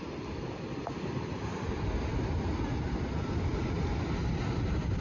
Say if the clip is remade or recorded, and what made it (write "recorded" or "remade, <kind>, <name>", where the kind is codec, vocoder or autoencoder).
recorded